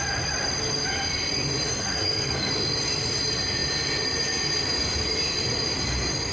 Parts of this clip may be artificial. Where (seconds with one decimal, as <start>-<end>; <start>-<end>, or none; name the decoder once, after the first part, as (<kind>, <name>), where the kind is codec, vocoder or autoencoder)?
1.7-2.5 (codec, SNAC)